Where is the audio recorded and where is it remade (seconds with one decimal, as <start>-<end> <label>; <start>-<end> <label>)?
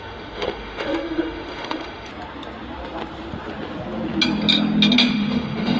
0.0-2.1 remade; 2.1-5.1 recorded; 5.1-5.8 remade